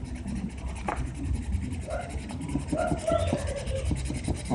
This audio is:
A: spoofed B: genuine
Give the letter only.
B